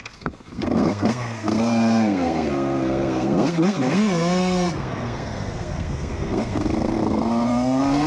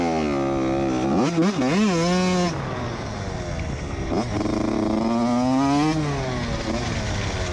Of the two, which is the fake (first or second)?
first